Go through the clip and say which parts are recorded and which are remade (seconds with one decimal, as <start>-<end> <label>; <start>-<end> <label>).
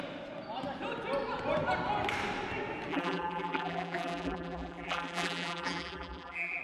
0.0-2.9 recorded; 2.9-6.6 remade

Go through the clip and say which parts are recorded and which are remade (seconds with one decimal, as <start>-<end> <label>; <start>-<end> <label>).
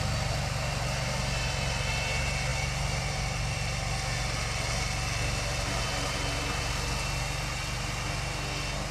0.0-8.9 recorded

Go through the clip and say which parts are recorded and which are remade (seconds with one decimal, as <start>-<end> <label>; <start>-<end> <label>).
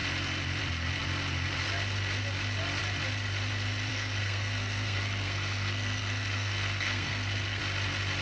0.0-3.9 recorded; 3.9-7.6 remade; 7.6-8.2 recorded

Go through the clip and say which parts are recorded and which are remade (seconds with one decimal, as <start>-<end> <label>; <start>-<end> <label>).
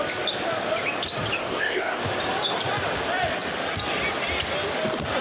0.0-1.4 recorded; 1.4-2.0 remade; 2.0-5.2 recorded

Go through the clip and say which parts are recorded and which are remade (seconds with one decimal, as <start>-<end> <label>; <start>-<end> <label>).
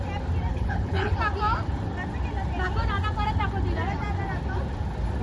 0.0-0.5 recorded; 0.5-1.1 remade; 1.1-5.2 recorded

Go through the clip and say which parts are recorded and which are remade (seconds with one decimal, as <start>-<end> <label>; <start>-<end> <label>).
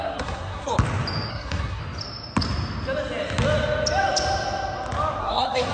0.0-0.7 remade; 0.7-1.3 recorded; 1.3-1.8 remade; 1.8-5.2 recorded; 5.2-5.7 remade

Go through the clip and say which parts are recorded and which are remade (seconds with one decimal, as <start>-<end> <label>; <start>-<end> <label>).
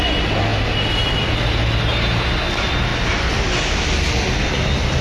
0.0-5.0 recorded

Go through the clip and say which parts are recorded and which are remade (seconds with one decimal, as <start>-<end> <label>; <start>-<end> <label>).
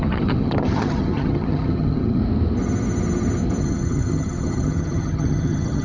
0.0-2.2 remade; 2.2-3.6 recorded; 3.6-5.8 remade